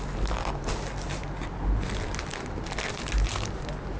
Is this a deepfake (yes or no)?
no